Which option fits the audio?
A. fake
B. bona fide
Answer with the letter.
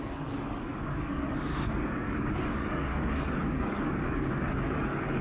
A